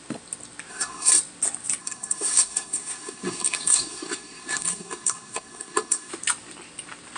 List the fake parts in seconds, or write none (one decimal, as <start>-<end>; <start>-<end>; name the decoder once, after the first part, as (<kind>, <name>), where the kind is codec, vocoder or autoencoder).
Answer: 0.7-1.2 (codec, SNAC); 1.8-6.1